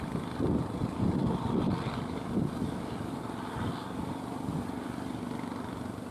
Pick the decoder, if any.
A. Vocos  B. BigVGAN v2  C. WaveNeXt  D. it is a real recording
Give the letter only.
D